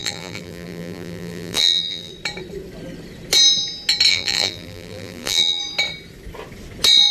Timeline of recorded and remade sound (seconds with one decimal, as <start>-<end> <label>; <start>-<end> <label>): 0.0-2.1 remade; 2.1-4.1 recorded; 4.1-5.6 remade; 5.6-7.1 recorded